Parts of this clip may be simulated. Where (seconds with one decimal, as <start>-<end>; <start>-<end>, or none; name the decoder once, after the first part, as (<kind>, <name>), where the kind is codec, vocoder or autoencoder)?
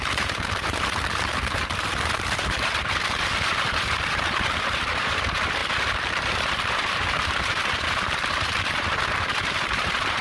0.0-10.2 (vocoder, BigVGAN v2)